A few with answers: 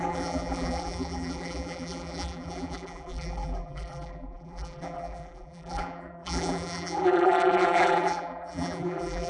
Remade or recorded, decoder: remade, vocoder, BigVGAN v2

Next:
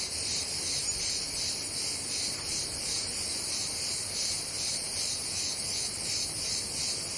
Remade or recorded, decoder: remade, vocoder, BigVGAN v2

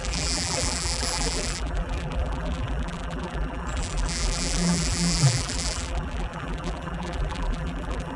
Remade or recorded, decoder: remade, vocoder, BigVGAN v2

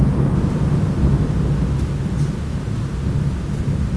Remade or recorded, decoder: recorded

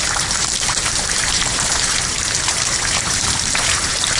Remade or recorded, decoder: remade, vocoder, BigVGAN v2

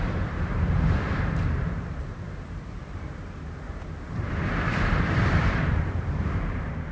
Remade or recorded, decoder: remade, vocoder, BigVGAN v2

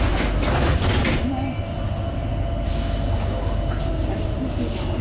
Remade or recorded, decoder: recorded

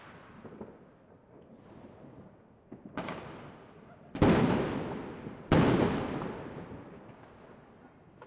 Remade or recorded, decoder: recorded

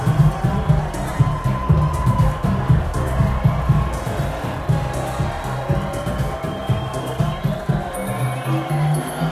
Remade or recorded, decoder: recorded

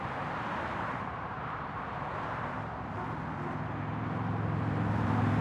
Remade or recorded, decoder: remade, vocoder, BigVGAN v2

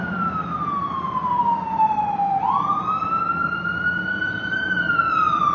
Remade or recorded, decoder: recorded